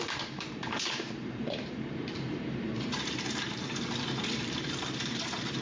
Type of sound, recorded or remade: remade